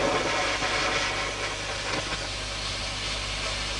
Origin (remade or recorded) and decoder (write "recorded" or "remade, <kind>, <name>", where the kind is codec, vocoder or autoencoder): recorded